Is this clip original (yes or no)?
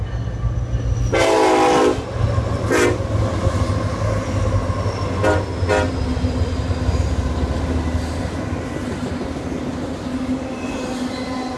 yes